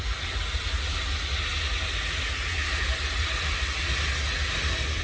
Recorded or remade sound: recorded